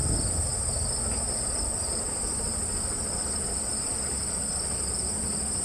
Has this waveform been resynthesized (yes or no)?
no